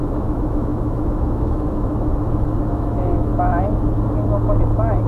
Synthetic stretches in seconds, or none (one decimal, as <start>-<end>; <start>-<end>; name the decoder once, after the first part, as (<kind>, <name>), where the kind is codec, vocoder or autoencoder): 0.0-2.1 (autoencoder, DAC-VAE); 2.7-3.3